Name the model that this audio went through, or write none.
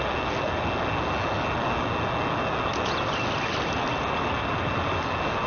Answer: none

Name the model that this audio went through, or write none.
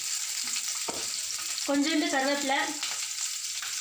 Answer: none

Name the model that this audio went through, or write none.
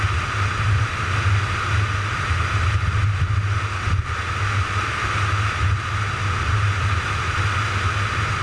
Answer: none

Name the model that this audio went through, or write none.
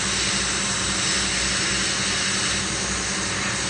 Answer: none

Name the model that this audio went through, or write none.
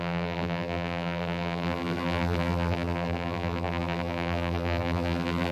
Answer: vocoder, BigVGAN v2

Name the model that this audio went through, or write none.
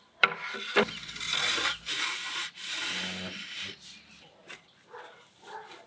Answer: vocoder, BigVGAN v2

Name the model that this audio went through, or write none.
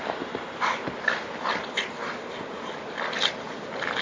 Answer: none